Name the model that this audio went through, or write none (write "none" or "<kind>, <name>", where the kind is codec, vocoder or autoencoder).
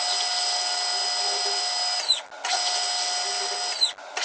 none